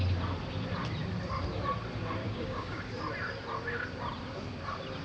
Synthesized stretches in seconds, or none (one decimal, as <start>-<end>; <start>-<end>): 2.2-2.8

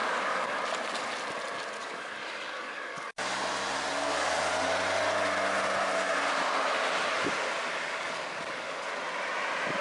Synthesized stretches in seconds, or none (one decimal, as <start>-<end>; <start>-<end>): 0.0-0.6; 1.8-3.1; 7.7-9.0

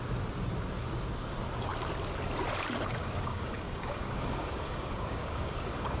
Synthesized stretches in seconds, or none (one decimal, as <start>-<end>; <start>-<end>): 2.9-6.0

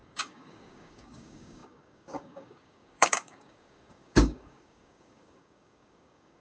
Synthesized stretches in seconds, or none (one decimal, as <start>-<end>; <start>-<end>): 0.0-6.4

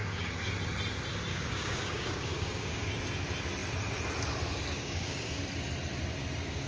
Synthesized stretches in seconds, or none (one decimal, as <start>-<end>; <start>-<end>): 0.0-0.5; 1.3-2.9; 4.7-5.4

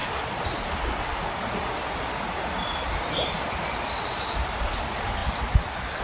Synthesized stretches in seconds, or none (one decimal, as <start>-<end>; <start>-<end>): none

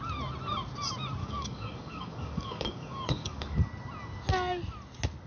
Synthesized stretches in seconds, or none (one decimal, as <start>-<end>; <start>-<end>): 1.2-3.6